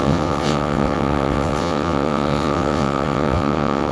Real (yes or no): no